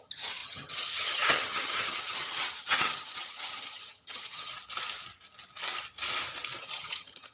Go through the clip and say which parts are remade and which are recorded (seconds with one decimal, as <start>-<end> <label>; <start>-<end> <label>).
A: 0.0-4.5 remade; 4.5-6.6 recorded; 6.6-7.3 remade